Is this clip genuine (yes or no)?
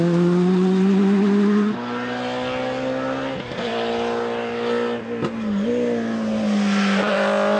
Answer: yes